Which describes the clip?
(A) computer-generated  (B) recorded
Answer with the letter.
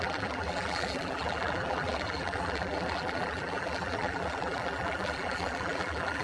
A